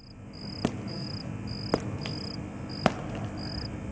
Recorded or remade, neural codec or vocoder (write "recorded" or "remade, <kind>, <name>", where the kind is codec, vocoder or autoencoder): recorded